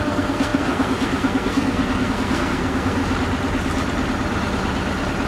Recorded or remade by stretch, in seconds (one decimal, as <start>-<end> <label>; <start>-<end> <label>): 0.0-3.0 remade; 3.0-5.3 recorded